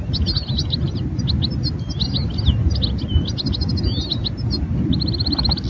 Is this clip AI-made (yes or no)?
no